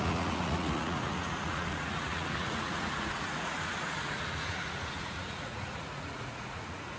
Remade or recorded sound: remade